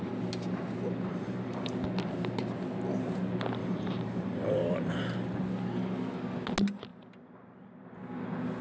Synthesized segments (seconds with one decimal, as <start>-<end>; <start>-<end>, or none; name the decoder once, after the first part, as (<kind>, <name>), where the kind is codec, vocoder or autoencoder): 1.1-1.6 (vocoder, BigVGAN v2); 3.6-5.0